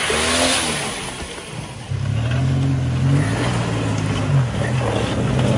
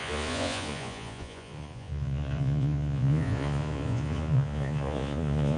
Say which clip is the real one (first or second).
first